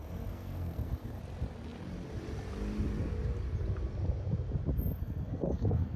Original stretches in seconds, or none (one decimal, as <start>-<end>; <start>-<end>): 1.2-5.0